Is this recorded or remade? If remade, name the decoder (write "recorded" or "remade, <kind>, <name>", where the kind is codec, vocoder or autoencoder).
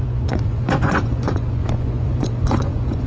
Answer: remade, vocoder, Vocos